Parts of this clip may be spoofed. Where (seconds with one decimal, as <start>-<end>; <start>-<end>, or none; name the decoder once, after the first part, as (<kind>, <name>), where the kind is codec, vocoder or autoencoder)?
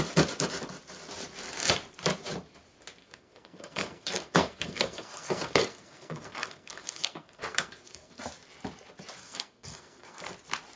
3.0-8.2 (codec, SNAC); 9.2-10.2